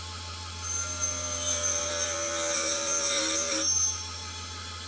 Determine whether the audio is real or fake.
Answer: fake